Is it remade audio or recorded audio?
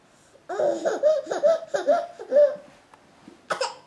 recorded